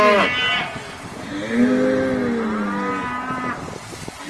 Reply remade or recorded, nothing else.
recorded